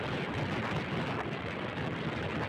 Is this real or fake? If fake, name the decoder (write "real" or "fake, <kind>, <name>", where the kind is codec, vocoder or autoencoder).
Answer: real